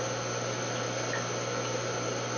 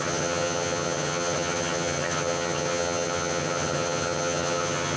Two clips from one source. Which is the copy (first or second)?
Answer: second